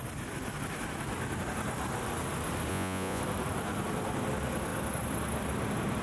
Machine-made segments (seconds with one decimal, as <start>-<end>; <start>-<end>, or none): 2.7-3.2